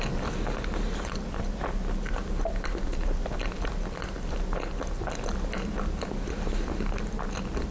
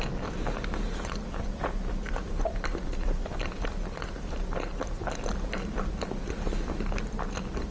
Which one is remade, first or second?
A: second